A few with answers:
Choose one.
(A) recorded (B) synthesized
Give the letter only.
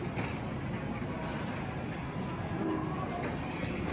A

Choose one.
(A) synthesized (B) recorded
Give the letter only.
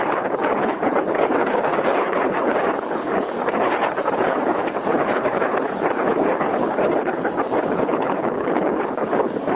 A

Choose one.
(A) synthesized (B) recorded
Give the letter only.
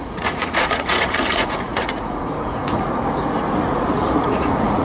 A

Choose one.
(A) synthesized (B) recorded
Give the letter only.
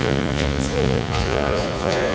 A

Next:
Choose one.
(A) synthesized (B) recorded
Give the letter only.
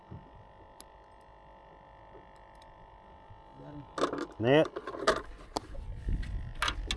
B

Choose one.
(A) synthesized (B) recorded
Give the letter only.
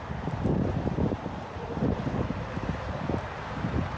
B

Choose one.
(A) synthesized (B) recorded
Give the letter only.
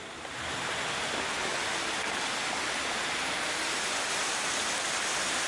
B